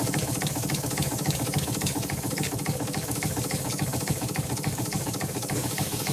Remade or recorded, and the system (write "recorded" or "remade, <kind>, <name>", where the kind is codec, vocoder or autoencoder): remade, codec, DAC